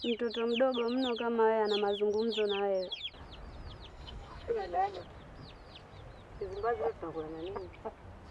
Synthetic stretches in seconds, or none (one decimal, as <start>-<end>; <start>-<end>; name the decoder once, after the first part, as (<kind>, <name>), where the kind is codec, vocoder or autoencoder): 3.9-5.0 (codec, SNAC)